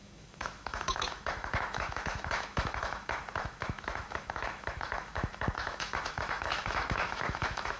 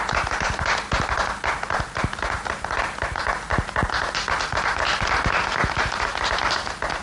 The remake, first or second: first